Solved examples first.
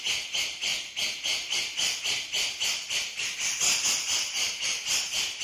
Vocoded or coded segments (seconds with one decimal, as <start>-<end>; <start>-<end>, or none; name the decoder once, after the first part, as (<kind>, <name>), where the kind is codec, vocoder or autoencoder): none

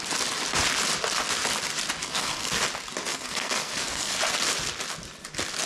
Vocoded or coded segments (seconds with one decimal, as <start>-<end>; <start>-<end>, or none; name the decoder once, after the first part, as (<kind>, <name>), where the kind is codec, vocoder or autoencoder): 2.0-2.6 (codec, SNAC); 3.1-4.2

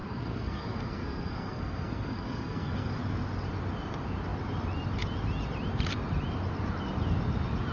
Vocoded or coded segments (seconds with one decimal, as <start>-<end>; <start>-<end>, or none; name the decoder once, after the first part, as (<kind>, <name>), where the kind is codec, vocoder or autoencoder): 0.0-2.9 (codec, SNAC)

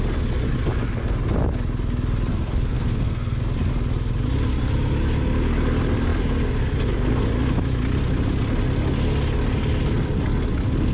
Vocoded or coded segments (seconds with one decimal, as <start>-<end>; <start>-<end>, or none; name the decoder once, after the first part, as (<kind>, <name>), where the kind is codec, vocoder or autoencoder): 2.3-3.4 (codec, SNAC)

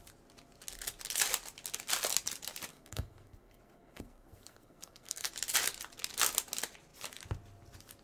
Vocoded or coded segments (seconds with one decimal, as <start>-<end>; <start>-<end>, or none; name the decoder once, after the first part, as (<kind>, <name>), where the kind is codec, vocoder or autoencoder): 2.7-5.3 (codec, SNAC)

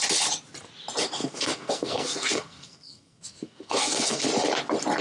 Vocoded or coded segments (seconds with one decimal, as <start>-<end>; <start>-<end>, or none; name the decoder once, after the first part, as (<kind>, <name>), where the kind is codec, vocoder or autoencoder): 1.2-4.2 (codec, SNAC)

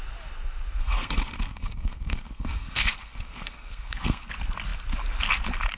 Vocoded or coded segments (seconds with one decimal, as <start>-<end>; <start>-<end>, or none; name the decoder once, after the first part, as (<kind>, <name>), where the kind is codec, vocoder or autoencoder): 0.8-4.3 (codec, SNAC)